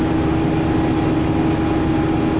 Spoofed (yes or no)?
no